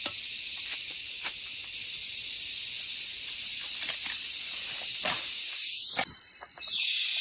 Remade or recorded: recorded